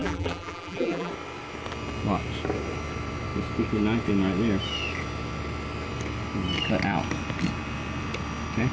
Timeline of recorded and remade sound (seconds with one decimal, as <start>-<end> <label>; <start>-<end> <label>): 0.0-1.1 remade; 1.1-8.7 recorded